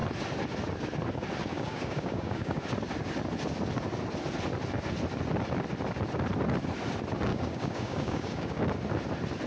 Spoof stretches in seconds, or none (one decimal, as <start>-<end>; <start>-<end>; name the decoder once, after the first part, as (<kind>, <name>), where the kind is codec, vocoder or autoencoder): 1.5-2.6 (codec, DAC); 7.3-8.6